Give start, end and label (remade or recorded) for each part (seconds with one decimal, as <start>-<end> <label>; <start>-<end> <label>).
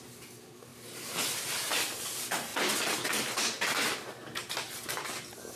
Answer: 0.0-5.6 recorded